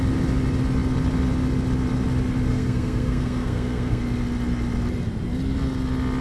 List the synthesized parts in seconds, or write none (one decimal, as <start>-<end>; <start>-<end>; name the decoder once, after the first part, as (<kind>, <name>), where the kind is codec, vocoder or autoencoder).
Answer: 2.5-4.0 (codec, SNAC)